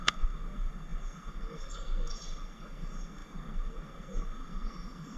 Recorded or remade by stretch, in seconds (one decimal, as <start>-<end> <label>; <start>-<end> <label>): 0.0-5.2 remade